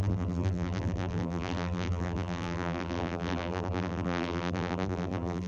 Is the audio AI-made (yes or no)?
yes